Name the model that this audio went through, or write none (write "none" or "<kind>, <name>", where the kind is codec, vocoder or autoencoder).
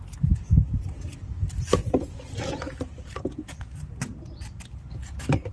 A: none